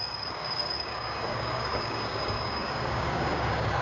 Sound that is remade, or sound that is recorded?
remade